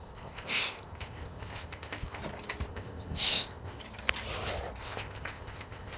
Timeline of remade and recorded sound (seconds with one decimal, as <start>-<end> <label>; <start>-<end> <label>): 0.0-2.2 remade; 2.2-2.7 recorded; 2.7-3.8 remade; 3.8-4.8 recorded; 4.8-6.0 remade